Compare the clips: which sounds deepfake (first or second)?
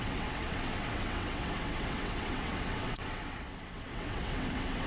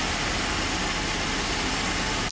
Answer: first